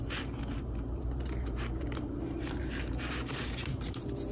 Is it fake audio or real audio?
fake